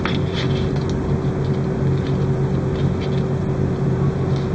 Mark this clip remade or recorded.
recorded